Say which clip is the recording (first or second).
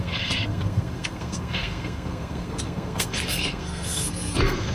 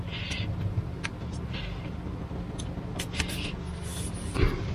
second